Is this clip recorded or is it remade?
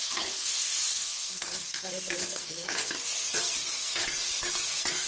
remade